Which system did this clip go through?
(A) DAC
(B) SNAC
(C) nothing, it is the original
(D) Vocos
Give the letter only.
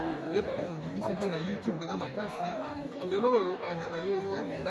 A